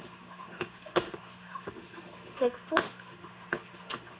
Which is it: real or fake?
fake